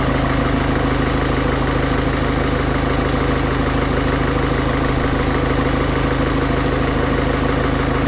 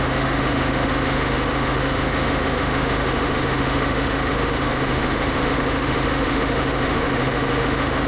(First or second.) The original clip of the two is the first